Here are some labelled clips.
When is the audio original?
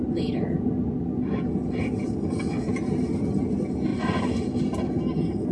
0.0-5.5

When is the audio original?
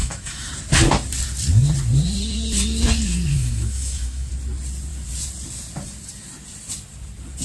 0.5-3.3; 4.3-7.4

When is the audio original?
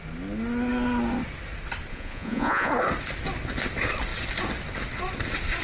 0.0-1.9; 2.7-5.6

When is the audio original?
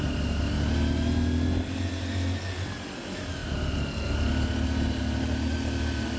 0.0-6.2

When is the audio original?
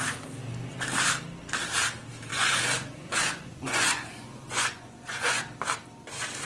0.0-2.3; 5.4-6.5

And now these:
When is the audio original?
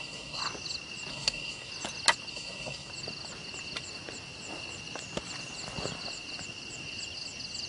0.4-1.1; 1.7-2.3; 2.9-7.7